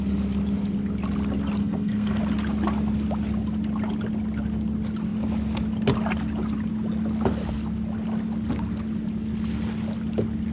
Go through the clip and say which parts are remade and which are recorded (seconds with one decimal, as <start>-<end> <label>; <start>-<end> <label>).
0.0-1.6 recorded; 1.6-2.2 remade; 2.2-10.5 recorded